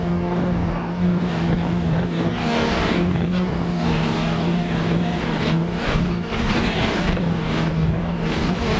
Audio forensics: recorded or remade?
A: remade